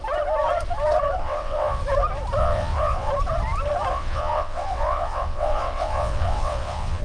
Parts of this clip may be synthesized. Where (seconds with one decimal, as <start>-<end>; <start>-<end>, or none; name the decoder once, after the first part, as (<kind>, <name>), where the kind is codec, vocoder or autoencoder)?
1.2-1.8 (vocoder, WaveNeXt); 2.4-3.1; 3.9-7.0